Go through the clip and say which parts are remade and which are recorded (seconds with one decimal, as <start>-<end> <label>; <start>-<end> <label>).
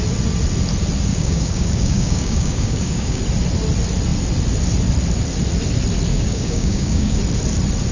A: 0.0-1.1 recorded; 1.1-3.2 remade; 3.2-6.1 recorded; 6.1-7.2 remade; 7.2-7.9 recorded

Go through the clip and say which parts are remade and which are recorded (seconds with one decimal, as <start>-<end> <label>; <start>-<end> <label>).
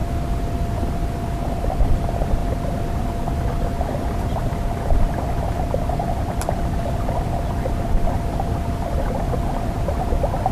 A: 0.0-10.5 recorded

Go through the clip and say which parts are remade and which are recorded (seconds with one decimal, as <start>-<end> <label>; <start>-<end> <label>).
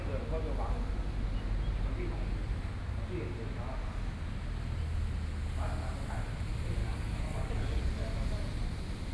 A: 0.0-6.8 recorded; 6.8-7.5 remade; 7.5-9.1 recorded